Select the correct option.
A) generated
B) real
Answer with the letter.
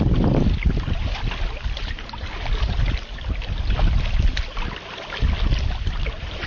B